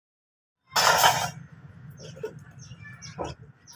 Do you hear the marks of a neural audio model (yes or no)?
no